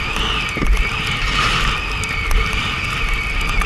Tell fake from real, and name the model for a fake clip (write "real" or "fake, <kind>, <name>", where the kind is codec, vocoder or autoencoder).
real